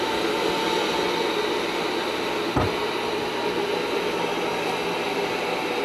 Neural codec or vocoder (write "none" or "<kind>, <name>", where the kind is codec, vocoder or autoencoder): none